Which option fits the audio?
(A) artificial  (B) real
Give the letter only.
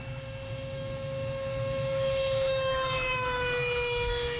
A